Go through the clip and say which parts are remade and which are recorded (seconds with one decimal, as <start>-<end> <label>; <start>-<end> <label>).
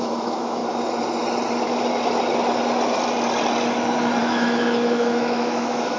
0.0-0.6 remade; 0.6-4.2 recorded; 4.2-6.0 remade